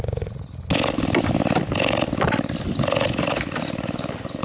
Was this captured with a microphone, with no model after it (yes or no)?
yes